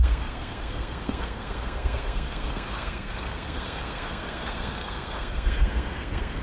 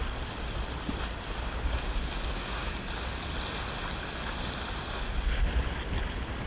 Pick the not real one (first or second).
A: first